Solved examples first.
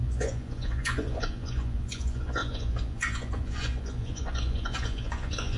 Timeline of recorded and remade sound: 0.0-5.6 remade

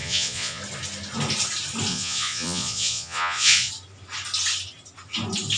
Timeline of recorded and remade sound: 0.0-0.6 remade; 0.6-1.9 recorded; 1.9-3.7 remade; 3.7-5.6 recorded

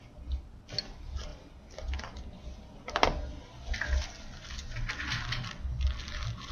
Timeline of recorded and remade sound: 0.0-6.5 recorded

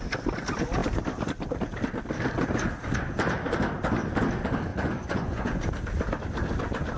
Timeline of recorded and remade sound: 0.0-4.7 recorded; 4.7-5.6 remade; 5.6-7.0 recorded

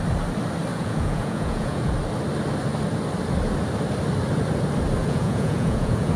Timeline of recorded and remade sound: 0.0-0.7 recorded; 0.7-1.9 remade; 1.9-5.0 recorded; 5.0-6.2 remade

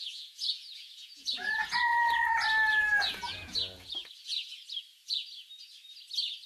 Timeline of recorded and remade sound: 0.0-1.9 remade; 1.9-3.0 recorded; 3.0-4.0 remade; 4.0-6.5 recorded

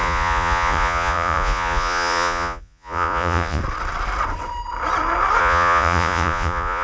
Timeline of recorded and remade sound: 0.0-3.6 remade; 3.6-5.4 recorded; 5.4-6.8 remade